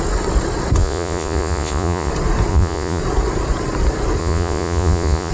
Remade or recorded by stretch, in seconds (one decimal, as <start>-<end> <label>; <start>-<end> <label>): 0.0-0.8 recorded; 0.8-2.1 remade; 2.1-2.5 recorded; 2.5-3.0 remade; 3.0-4.2 recorded; 4.2-5.3 remade